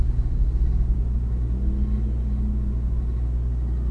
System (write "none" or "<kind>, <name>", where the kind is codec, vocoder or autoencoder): none